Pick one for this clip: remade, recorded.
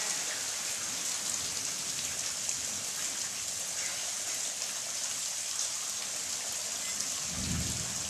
recorded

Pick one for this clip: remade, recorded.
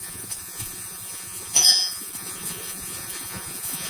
remade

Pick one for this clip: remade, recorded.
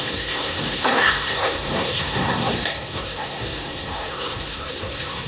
remade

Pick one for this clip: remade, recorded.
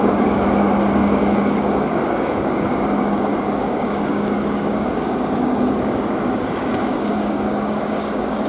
remade